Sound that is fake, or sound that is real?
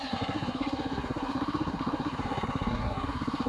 fake